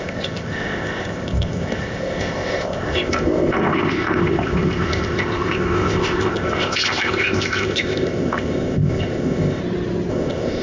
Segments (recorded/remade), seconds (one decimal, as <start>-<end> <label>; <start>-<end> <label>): 0.0-9.6 remade; 9.6-10.1 recorded; 10.1-10.6 remade